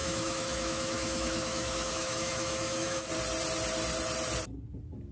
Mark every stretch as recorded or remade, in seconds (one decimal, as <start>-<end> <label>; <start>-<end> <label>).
0.0-3.1 remade; 3.1-5.1 recorded